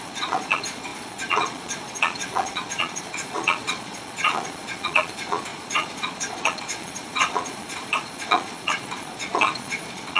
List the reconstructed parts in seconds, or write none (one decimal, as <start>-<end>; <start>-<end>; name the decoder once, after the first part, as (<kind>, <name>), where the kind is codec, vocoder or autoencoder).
0.0-10.2 (vocoder, Vocos)